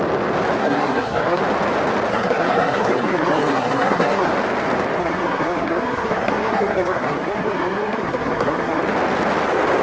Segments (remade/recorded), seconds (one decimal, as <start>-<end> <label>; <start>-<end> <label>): 0.0-0.6 recorded; 0.6-1.4 remade; 1.4-2.1 recorded; 2.1-4.3 remade; 4.3-5.0 recorded; 5.0-8.8 remade; 8.8-9.8 recorded